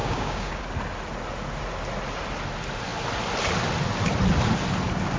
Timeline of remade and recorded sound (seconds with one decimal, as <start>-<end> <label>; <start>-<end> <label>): 0.0-0.6 remade; 0.6-5.2 recorded